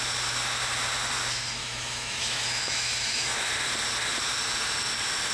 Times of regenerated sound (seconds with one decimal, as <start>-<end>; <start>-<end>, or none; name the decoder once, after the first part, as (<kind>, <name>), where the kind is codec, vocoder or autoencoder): 1.6-3.5 (autoencoder, DAC-VAE)